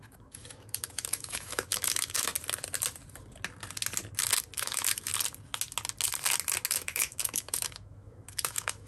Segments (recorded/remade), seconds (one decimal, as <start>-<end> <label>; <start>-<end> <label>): 0.0-2.3 remade; 2.3-4.6 recorded; 4.6-5.1 remade; 5.1-6.7 recorded; 6.7-8.9 remade